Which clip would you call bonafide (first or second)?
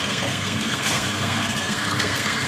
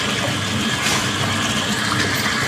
second